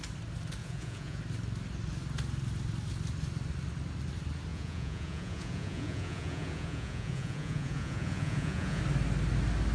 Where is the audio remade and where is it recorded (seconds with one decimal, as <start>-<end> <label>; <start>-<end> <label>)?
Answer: 0.0-0.6 recorded; 0.6-1.2 remade; 1.2-4.5 recorded; 4.5-8.8 remade; 8.8-9.7 recorded